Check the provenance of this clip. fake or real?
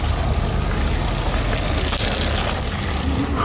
real